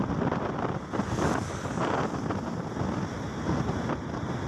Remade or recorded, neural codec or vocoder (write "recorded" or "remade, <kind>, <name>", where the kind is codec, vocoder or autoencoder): recorded